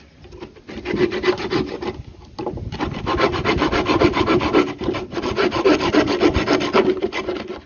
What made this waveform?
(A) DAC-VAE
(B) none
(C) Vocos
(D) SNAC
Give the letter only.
B